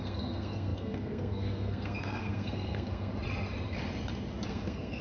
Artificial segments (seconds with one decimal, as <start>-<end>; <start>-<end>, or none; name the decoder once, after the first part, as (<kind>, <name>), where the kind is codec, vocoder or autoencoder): 0.0-3.1 (codec, SNAC); 4.5-5.0